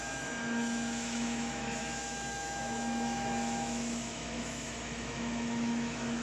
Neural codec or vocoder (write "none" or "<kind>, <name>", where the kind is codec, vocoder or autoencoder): autoencoder, DAC-VAE